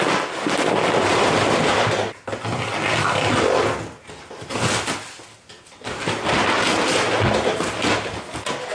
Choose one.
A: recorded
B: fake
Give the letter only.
A